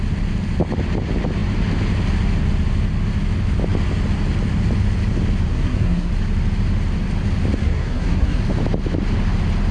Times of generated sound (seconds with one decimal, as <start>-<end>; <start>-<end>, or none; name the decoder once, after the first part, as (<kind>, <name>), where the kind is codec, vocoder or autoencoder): 5.5-6.1 (codec, SNAC); 7.6-8.4